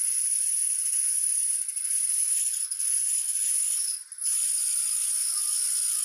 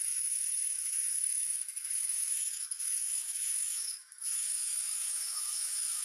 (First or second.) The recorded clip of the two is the first